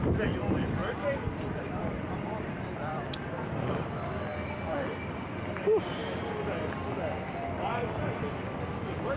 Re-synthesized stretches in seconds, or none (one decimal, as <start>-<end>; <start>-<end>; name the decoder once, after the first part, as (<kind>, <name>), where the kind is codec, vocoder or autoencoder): 0.0-0.8 (vocoder, BigVGAN v2); 1.7-6.0; 6.9-9.2